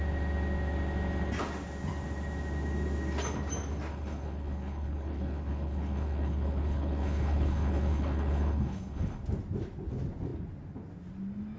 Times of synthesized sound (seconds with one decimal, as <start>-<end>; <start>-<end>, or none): 3.9-9.2